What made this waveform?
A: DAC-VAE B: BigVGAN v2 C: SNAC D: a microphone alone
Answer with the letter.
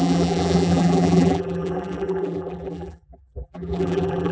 B